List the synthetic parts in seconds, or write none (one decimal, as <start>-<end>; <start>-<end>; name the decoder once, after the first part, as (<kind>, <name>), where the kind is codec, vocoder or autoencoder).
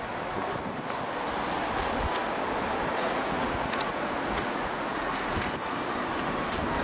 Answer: 3.0-5.2 (vocoder, Vocos)